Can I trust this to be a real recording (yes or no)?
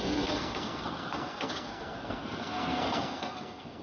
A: no